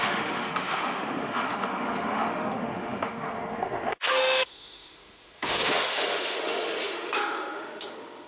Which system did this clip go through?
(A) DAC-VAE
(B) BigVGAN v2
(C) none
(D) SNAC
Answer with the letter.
A